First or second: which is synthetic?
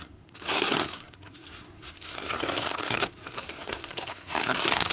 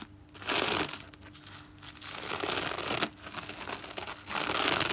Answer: first